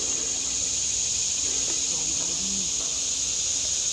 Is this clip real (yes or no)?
yes